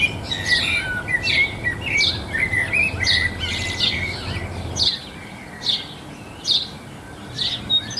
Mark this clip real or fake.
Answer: real